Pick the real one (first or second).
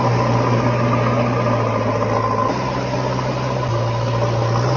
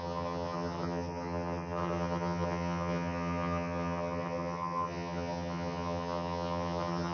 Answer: first